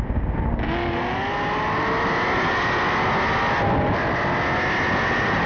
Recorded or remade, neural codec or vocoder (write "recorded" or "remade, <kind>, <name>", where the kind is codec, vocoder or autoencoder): recorded